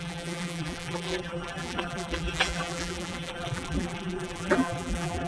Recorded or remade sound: remade